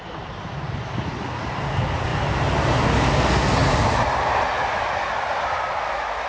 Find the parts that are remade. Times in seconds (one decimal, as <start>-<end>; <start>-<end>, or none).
none

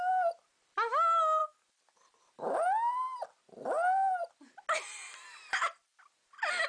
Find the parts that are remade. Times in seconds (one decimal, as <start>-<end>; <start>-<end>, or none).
none

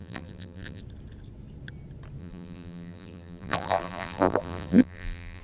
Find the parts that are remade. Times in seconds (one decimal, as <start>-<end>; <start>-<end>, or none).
0.0-0.8; 2.2-5.4

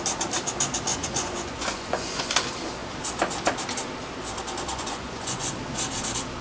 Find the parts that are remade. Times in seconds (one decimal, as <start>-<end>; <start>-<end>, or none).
0.9-2.3; 4.7-5.5

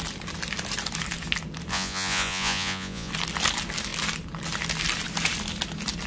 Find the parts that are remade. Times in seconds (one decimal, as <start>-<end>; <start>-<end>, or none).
1.7-3.1

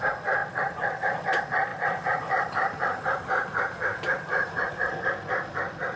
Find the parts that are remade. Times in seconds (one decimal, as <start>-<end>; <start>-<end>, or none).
1.7-4.7

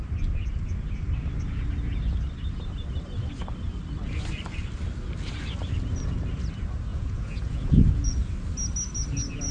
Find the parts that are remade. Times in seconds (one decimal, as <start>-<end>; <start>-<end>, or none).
6.9-8.2